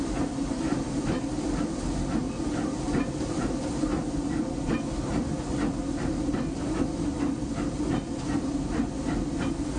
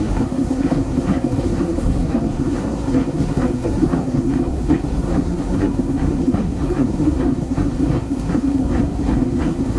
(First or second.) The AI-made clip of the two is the second